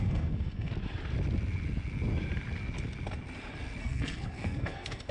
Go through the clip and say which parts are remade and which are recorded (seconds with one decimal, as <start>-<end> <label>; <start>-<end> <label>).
0.0-0.7 remade; 0.7-3.8 recorded; 3.8-5.1 remade